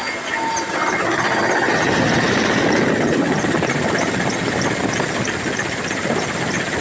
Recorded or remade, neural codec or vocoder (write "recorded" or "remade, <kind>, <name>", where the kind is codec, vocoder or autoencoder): recorded